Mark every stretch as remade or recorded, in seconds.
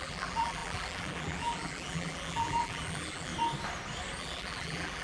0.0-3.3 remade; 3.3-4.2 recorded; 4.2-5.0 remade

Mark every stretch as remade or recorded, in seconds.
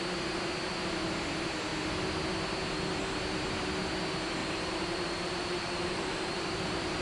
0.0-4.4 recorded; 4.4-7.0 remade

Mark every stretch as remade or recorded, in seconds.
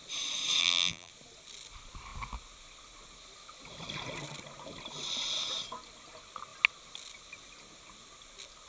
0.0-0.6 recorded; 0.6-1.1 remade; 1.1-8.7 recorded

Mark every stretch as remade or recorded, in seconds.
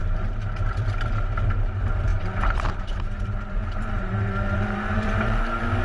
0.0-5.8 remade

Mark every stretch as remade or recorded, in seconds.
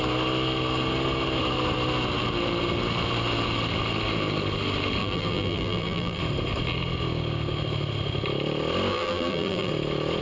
0.0-5.0 recorded; 5.0-6.2 remade; 6.2-8.9 recorded; 8.9-9.7 remade; 9.7-10.2 recorded